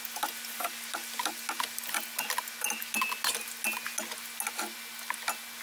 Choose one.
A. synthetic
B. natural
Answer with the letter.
B